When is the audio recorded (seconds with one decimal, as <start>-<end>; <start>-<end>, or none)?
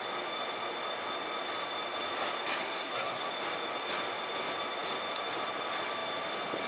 0.0-2.6; 3.3-6.7